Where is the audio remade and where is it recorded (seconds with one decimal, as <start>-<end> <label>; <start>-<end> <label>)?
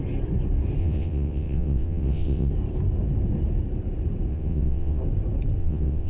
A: 0.0-0.8 recorded; 0.8-2.5 remade; 2.5-4.3 recorded; 4.3-5.0 remade; 5.0-5.6 recorded; 5.6-6.1 remade